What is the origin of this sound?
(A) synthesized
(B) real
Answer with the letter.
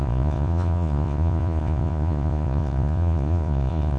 A